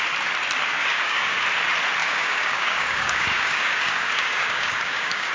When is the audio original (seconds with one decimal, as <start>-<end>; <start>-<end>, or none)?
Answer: 0.0-0.7; 1.4-2.0